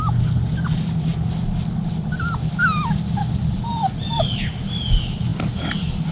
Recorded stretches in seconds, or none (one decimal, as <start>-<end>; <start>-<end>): 0.0-6.1